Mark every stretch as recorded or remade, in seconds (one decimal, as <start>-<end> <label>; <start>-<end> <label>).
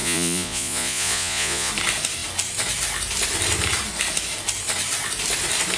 0.0-1.7 remade; 1.7-5.8 recorded